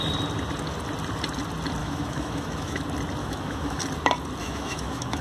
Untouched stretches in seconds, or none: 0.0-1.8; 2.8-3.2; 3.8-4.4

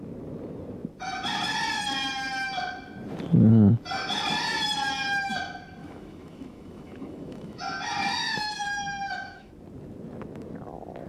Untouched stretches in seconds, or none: 0.0-5.8; 7.6-8.2; 9.5-11.1

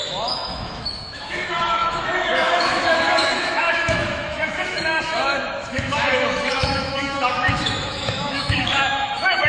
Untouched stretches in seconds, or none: none

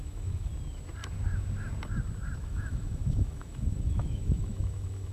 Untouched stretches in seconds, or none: 0.5-2.4

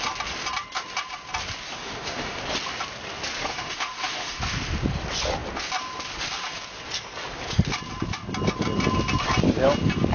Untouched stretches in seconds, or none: 0.0-1.8; 2.4-3.5; 4.4-10.1

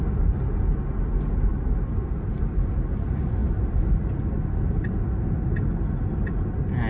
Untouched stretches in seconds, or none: 0.0-6.9

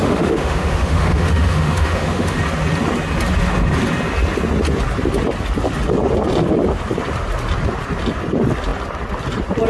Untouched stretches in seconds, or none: 2.4-9.7